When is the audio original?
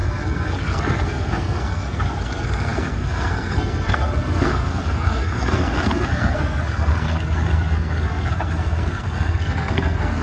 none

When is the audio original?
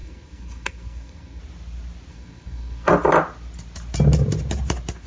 1.4-2.1; 2.9-5.1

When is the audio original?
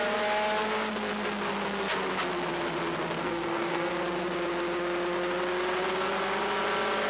0.0-3.2; 3.9-7.1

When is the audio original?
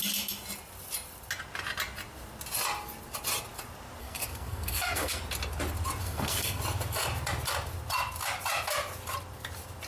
0.0-4.0; 5.2-6.0; 6.6-9.9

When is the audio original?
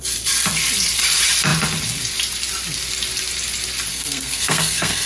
0.0-3.9